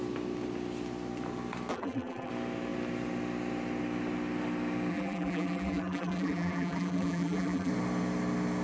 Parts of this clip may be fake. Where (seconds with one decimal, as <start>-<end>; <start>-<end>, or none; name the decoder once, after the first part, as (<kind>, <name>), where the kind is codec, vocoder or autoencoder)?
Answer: 1.7-2.3 (vocoder, BigVGAN v2); 4.9-7.7